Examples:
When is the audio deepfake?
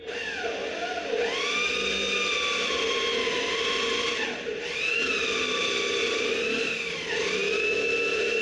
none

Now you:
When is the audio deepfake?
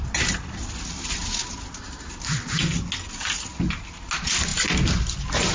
none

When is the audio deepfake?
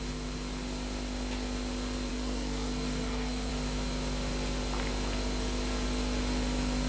2.1-3.5 (codec, SNAC)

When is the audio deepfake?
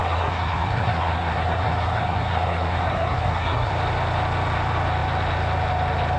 0.0-3.7 (codec, SNAC)